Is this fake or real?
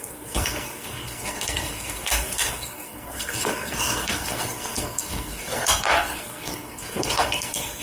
fake